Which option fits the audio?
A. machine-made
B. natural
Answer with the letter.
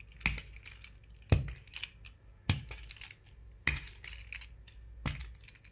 B